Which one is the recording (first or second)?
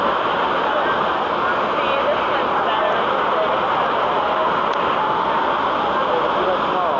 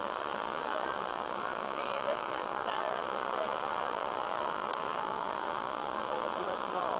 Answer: first